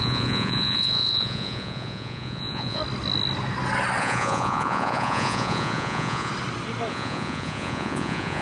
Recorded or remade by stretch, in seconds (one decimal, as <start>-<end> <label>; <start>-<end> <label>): 0.0-2.8 remade; 2.8-4.0 recorded; 4.0-6.3 remade; 6.3-6.9 recorded; 6.9-8.4 remade